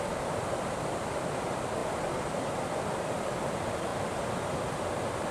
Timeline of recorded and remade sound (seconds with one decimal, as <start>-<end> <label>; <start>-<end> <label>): 0.0-5.3 recorded